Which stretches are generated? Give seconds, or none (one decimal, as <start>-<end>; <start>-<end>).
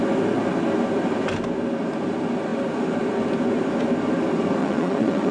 4.6-5.3